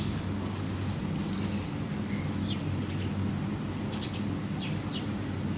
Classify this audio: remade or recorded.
recorded